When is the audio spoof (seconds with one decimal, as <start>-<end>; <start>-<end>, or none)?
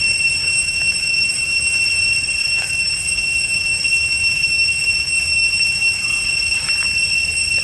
0.4-1.9; 2.4-6.6